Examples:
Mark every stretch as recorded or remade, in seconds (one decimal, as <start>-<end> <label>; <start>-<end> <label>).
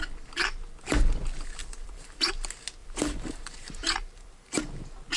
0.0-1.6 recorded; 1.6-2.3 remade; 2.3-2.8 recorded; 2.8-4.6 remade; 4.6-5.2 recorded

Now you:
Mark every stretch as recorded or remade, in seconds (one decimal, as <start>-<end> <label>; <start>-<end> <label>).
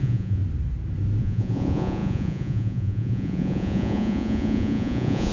0.0-0.4 remade; 0.4-1.2 recorded; 1.2-5.3 remade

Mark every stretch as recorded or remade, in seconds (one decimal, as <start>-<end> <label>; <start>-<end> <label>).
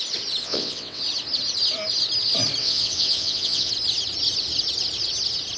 0.0-0.4 recorded; 0.4-1.0 remade; 1.0-2.6 recorded; 2.6-3.7 remade; 3.7-5.6 recorded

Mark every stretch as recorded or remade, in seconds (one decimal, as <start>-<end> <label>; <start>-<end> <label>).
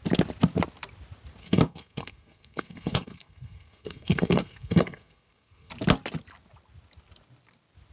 0.0-1.4 recorded; 1.4-5.7 remade; 5.7-7.9 recorded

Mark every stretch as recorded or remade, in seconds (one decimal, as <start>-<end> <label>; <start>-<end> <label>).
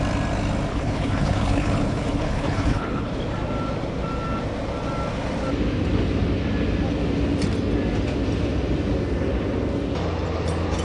0.0-0.7 recorded; 0.7-3.2 remade; 3.2-10.8 recorded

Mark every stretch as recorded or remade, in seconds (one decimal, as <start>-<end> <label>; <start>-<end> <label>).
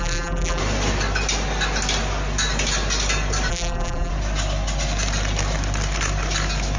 0.0-0.6 remade; 0.6-3.5 recorded; 3.5-4.1 remade; 4.1-6.8 recorded